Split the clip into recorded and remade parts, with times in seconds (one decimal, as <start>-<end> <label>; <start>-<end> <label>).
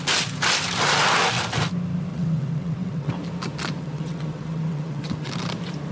0.0-2.1 recorded; 2.1-3.1 remade; 3.1-3.8 recorded; 3.8-5.3 remade; 5.3-5.9 recorded